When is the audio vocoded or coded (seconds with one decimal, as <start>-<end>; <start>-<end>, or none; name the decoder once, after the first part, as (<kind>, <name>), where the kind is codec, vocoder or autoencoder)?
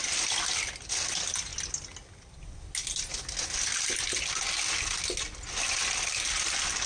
none